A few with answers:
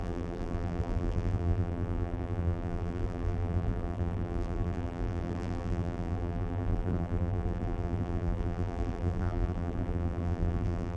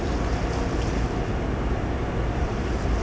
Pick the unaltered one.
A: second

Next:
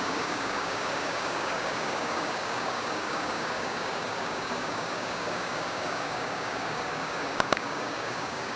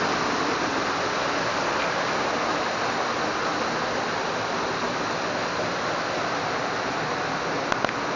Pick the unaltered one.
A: second